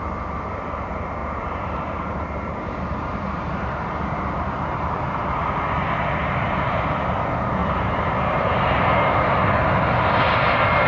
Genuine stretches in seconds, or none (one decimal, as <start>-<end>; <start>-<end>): 0.0-1.2; 4.9-6.2; 6.8-7.6; 9.4-10.9

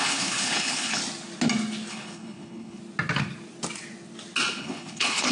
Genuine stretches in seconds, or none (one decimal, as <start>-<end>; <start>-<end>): 1.0-1.9; 2.8-4.6

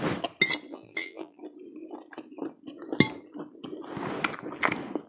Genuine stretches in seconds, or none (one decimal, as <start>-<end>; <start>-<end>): 0.0-0.7; 1.4-5.1